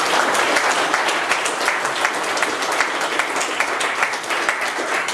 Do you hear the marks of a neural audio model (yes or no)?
no